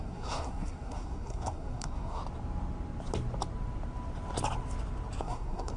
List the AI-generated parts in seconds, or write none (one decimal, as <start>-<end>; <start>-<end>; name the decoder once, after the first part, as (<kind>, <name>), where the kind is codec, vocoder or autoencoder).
0.0-2.2 (codec, SNAC); 5.2-5.8